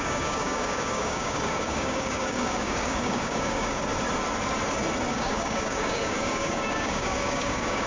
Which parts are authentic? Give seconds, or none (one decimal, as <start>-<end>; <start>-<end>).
3.9-5.1